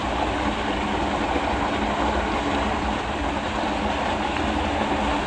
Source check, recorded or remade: recorded